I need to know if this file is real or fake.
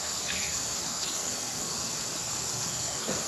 fake